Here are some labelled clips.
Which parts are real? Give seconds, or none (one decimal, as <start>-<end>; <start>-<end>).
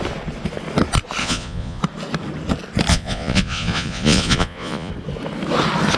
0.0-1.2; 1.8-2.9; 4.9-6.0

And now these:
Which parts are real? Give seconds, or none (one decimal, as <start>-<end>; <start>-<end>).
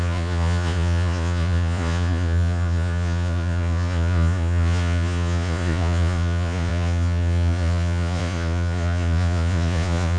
none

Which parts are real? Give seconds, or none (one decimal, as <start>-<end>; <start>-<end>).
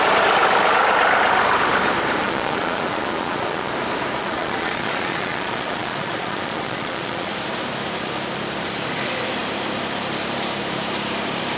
0.0-2.2; 3.7-4.2; 7.3-11.6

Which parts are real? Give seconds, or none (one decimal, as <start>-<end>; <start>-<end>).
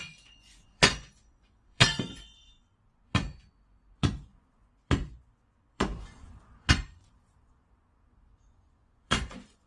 none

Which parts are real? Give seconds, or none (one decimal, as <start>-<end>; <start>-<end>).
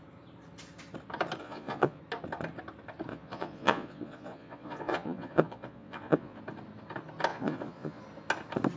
0.0-1.4; 2.0-3.1; 6.4-7.3; 8.0-8.8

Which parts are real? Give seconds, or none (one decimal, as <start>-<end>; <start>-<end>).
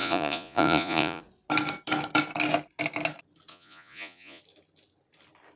1.2-3.5; 4.4-5.6